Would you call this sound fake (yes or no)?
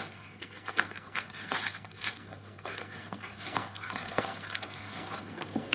yes